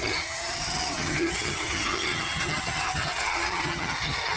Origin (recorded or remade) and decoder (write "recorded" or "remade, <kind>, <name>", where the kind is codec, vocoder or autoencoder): remade, vocoder, HiFi-GAN